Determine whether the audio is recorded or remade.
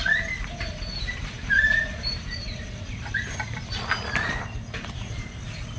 remade